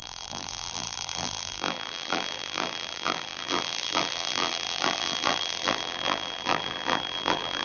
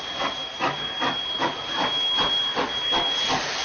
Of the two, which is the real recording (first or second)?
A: second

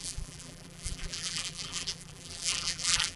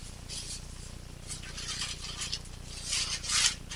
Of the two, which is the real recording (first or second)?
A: second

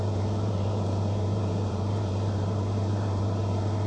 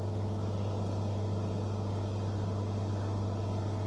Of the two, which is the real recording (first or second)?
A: second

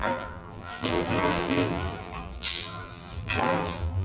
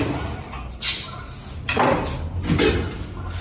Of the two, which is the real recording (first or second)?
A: second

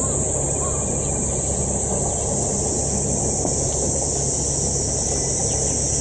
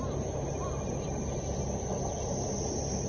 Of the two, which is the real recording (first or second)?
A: first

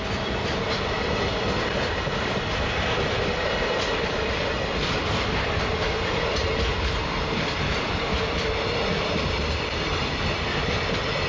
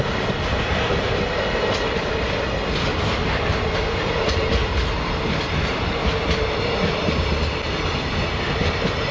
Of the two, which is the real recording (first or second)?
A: second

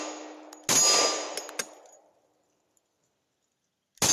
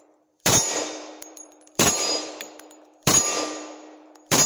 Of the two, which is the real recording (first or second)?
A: first